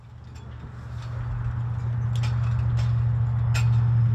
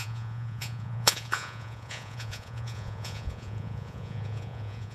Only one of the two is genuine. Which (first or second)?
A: first